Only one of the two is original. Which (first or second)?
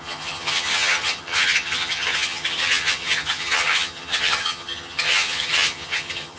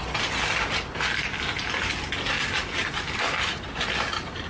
second